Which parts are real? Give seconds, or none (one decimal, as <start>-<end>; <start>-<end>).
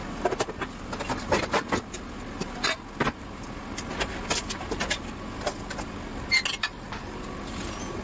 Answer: 0.0-8.0